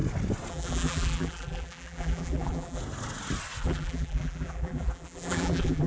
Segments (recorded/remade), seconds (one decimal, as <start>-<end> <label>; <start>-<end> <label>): 0.0-0.5 recorded; 0.5-2.8 remade; 2.8-3.6 recorded; 3.6-5.9 remade